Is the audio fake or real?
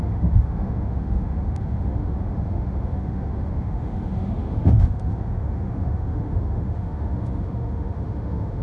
fake